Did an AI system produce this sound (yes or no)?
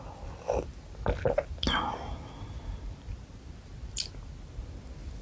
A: no